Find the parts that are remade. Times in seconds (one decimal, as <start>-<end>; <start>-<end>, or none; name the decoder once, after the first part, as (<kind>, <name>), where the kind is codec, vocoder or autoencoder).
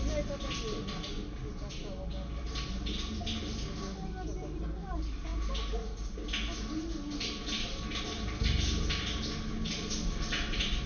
none